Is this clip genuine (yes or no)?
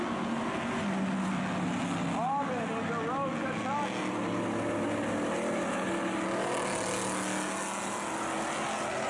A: yes